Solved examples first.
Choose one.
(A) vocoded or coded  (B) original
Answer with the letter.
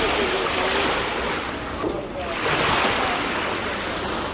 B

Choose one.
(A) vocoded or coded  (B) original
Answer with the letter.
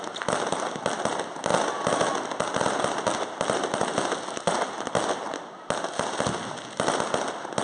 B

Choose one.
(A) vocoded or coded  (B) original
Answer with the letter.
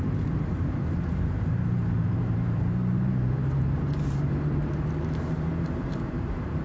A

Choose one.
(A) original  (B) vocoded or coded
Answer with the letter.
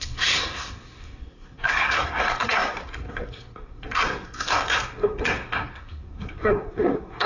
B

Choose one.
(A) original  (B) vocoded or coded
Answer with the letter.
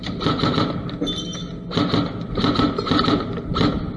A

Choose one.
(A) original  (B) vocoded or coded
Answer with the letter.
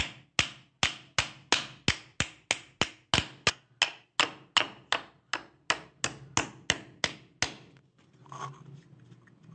A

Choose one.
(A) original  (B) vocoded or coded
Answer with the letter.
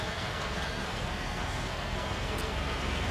B